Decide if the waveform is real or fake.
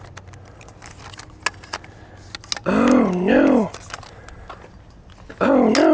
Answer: real